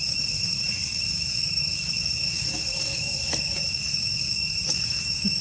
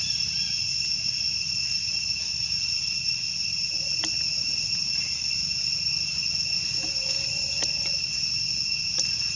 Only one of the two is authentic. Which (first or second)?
second